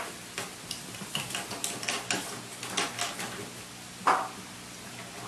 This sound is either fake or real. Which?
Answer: real